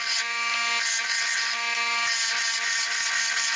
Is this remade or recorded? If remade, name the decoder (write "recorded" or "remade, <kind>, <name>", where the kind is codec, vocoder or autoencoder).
recorded